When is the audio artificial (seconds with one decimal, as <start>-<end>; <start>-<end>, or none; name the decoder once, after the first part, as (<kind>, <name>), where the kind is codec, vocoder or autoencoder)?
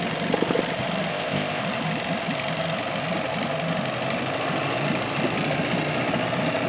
1.1-1.6 (codec, ZipCodec)